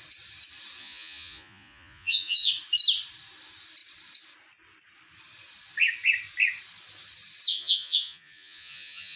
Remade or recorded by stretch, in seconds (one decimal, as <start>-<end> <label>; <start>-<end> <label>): 0.0-0.8 recorded; 0.8-2.5 remade; 2.5-7.5 recorded; 7.5-9.2 remade